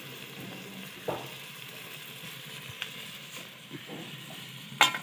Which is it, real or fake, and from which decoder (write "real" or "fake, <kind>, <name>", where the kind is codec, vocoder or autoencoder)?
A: real